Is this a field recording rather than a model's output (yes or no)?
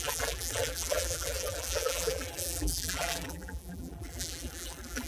no